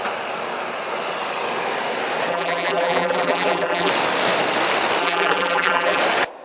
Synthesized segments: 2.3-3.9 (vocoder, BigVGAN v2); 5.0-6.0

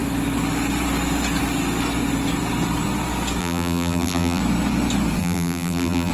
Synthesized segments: 3.4-4.4 (vocoder, BigVGAN v2); 5.2-6.1

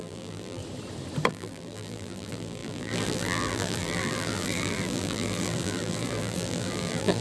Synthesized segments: 0.0-0.6 (vocoder, BigVGAN v2); 1.3-7.2

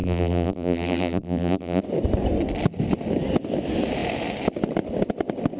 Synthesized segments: 0.0-1.8 (vocoder, BigVGAN v2)

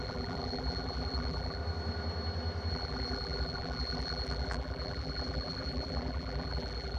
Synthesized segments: 0.0-1.6 (vocoder, BigVGAN v2); 2.7-7.0

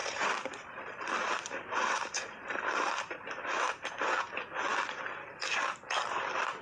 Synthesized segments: 0.0-4.0 (vocoder, BigVGAN v2)